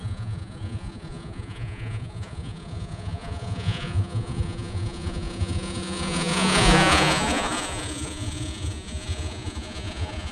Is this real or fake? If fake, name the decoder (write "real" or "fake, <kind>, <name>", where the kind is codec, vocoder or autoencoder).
fake, vocoder, Vocos